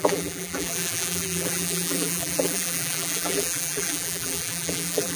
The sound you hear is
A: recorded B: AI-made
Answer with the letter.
B